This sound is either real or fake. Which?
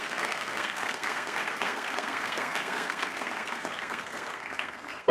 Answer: fake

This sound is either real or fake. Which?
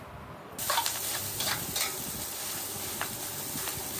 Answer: real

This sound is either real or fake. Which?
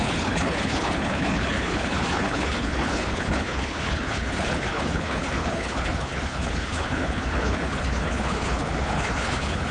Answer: fake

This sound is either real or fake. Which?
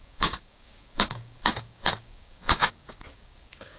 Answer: fake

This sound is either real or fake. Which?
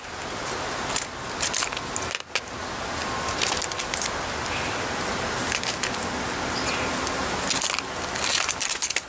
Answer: real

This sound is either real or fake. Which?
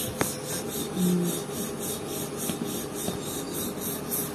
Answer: real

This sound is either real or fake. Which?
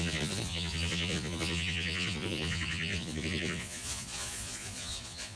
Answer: fake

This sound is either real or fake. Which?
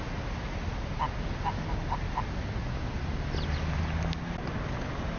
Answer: real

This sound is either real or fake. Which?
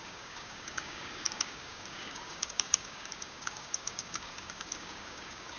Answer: fake